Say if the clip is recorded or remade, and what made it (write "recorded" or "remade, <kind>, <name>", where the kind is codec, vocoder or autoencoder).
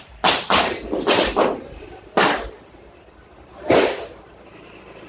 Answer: recorded